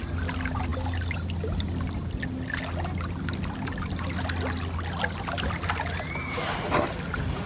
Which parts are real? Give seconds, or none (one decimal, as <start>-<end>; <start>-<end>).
0.0-7.5